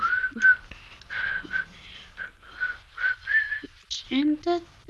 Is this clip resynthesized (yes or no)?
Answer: no